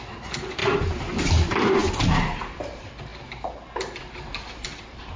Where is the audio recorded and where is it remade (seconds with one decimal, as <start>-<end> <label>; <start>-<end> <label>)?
0.0-5.2 recorded